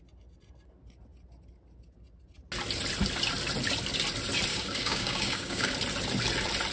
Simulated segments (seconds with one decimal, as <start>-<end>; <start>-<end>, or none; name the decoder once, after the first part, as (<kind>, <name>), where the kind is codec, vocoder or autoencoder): 4.5-5.7 (codec, DAC)